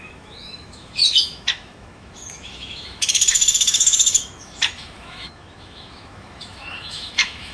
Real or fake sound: fake